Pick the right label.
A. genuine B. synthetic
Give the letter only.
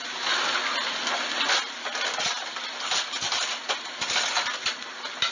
A